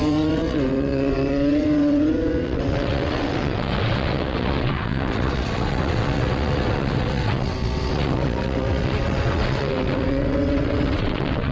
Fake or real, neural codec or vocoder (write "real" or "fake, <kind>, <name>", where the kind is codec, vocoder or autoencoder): fake, vocoder, WaveNeXt